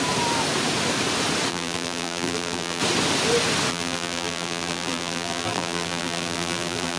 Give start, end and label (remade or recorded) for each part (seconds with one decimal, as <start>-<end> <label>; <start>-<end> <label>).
0.0-1.5 recorded; 1.5-2.8 remade; 2.8-3.7 recorded; 3.7-7.0 remade